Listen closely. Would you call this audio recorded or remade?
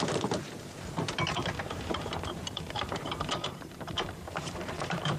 remade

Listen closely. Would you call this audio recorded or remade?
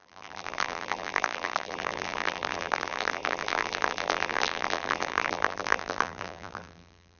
remade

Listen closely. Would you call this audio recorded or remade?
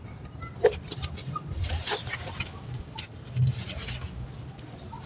recorded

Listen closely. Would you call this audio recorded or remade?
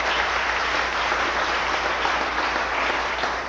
recorded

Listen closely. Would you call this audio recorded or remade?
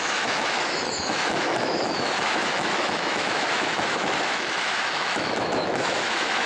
remade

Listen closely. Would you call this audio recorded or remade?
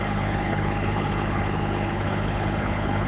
remade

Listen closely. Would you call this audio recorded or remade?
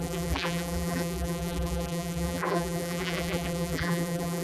remade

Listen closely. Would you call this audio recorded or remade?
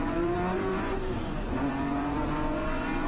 remade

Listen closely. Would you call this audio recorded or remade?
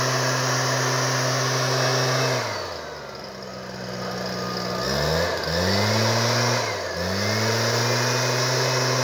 recorded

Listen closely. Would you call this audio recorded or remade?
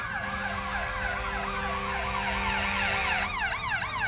recorded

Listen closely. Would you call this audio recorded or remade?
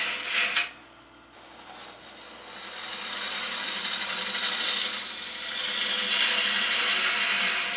recorded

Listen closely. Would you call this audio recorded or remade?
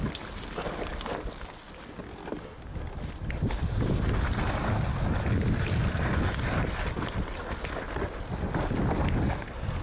recorded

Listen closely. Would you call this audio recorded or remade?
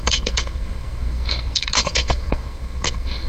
remade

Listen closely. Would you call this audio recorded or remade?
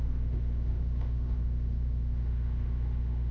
remade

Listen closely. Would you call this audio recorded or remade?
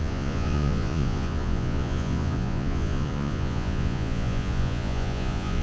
remade